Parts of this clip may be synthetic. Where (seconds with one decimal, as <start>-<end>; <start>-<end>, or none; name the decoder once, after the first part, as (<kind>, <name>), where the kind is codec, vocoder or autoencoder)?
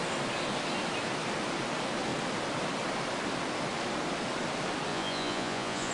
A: 4.9-5.9 (vocoder, Vocos)